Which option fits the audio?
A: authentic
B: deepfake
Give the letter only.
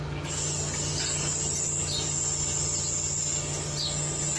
A